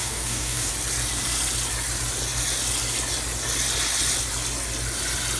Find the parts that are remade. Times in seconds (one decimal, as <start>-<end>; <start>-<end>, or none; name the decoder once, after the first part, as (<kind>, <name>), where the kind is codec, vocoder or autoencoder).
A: 0.0-0.7 (codec, DAC)